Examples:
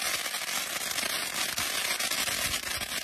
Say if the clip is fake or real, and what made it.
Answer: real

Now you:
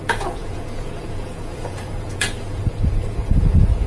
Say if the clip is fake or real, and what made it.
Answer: fake, vocoder, Vocos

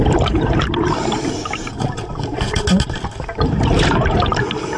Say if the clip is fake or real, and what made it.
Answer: fake, vocoder, BigVGAN v2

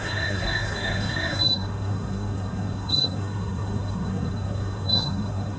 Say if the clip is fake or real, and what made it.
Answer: fake, codec, SNAC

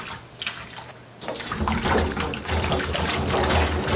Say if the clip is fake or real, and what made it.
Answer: real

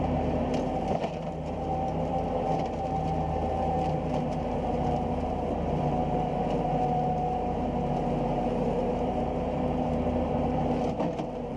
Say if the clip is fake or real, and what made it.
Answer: fake, vocoder, BigVGAN v2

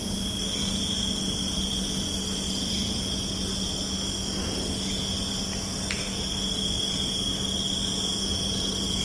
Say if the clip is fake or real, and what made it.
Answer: real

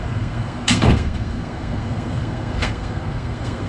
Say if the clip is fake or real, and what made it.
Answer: fake, codec, SNAC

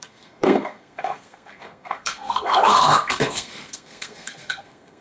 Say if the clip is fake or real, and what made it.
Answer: fake, codec, SNAC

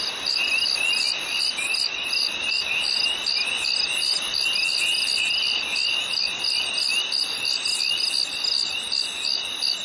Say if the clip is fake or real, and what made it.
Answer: real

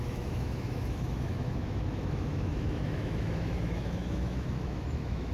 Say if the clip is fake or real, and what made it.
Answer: fake, autoencoder, DAC-VAE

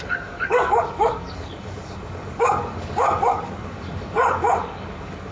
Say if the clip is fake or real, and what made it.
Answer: fake, codec, DAC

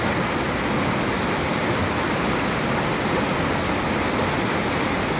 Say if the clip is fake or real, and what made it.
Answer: real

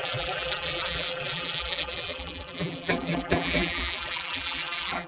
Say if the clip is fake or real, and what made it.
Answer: fake, vocoder, BigVGAN v2